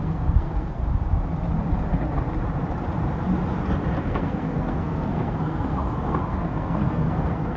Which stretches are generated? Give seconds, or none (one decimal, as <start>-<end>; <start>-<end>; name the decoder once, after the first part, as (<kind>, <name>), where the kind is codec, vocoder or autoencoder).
0.0-0.8 (codec, SNAC); 4.0-7.6